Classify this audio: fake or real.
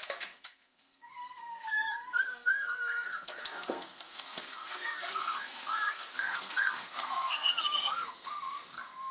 fake